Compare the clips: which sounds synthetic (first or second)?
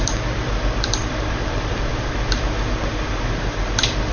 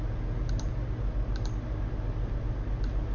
first